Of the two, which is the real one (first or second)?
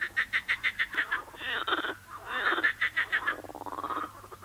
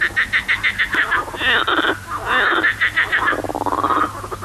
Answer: second